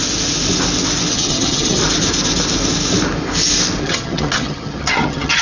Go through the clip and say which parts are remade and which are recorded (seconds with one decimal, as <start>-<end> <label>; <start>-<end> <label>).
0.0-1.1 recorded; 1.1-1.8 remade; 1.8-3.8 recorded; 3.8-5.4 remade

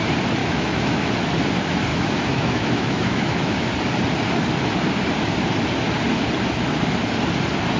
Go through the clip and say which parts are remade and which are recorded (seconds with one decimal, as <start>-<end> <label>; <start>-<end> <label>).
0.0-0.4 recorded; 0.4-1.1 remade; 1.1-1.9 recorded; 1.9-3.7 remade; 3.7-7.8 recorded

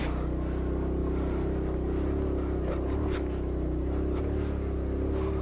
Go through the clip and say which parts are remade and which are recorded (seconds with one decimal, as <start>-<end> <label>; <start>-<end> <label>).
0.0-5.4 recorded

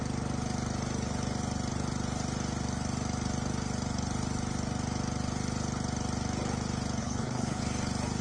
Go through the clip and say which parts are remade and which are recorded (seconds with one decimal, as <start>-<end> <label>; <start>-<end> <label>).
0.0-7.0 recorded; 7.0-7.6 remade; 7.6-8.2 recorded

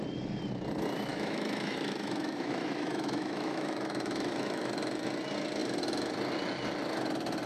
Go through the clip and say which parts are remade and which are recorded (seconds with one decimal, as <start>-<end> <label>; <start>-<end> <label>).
0.0-1.1 recorded; 1.1-4.7 remade; 4.7-7.5 recorded

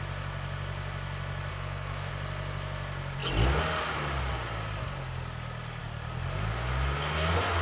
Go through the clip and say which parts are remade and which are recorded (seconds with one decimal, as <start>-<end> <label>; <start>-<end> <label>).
0.0-1.5 recorded; 1.5-2.1 remade; 2.1-7.6 recorded